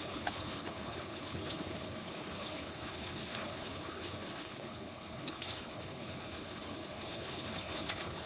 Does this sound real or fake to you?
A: fake